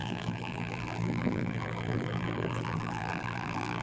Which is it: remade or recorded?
remade